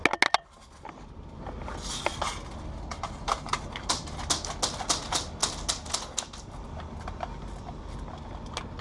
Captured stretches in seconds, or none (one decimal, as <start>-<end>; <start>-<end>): 0.0-2.9; 4.2-8.8